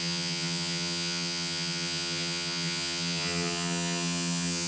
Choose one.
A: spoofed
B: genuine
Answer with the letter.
A